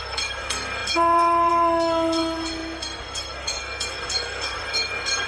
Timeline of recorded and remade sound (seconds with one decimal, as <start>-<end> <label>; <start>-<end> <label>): 0.0-5.3 remade